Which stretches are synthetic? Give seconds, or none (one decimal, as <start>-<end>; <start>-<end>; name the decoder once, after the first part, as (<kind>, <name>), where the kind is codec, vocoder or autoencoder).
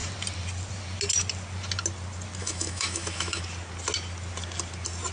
2.4-3.4 (autoencoder, DAC-VAE)